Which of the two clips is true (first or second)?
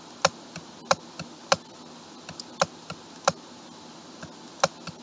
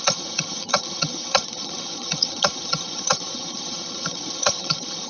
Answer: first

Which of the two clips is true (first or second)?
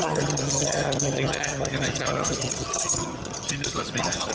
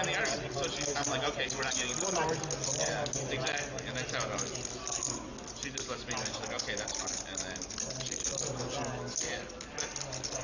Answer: second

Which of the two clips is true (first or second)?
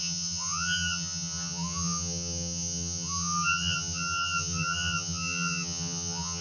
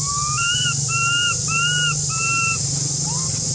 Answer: second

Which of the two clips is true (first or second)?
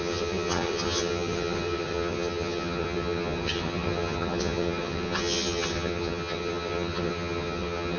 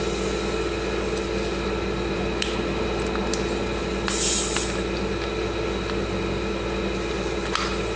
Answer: second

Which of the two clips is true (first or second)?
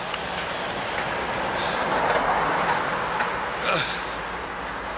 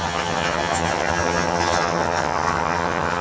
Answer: first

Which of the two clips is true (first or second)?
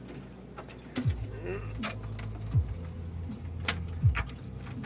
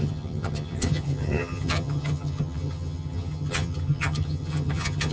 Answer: first